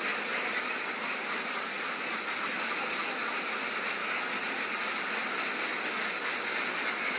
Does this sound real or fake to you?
real